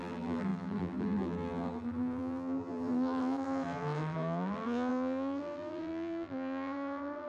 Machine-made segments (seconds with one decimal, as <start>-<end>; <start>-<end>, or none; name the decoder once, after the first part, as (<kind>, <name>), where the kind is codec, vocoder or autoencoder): 0.0-7.3 (vocoder, BigVGAN v2)